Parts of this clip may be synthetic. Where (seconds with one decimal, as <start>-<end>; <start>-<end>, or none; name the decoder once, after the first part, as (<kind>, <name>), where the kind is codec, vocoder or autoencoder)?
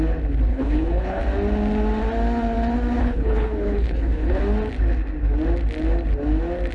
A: 0.5-1.2 (codec, HILCodec); 3.0-4.4